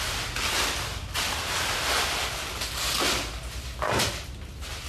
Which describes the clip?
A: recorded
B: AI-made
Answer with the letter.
A